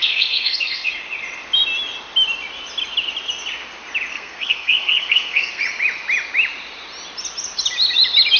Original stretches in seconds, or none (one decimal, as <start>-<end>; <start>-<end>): 0.9-4.1; 5.6-8.4